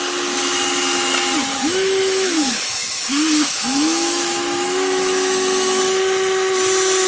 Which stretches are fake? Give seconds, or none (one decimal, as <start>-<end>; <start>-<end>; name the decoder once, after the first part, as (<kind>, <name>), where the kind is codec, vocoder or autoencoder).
1.5-5.8 (autoencoder, DAC-VAE)